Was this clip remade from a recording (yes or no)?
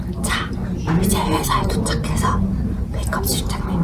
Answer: no